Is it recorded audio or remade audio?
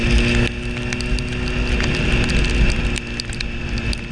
recorded